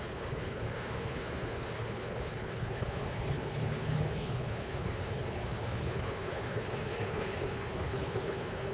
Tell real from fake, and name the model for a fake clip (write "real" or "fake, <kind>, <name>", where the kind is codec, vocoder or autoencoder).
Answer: fake, codec, HILCodec